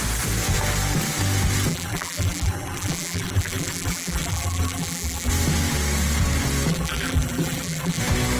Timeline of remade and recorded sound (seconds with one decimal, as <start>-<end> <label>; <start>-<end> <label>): 0.0-1.7 recorded; 1.7-5.3 remade; 5.3-6.7 recorded; 6.7-8.0 remade; 8.0-8.4 recorded